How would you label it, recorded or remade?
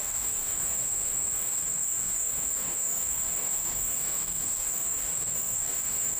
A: remade